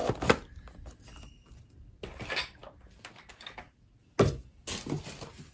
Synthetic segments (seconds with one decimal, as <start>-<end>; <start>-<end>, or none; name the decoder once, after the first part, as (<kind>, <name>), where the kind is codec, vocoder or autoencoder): none